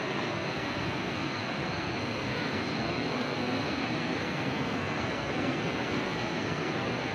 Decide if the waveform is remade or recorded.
remade